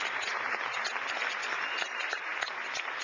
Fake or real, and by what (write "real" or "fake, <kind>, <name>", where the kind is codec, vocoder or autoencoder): real